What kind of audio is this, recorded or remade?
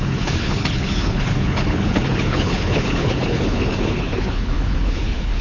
remade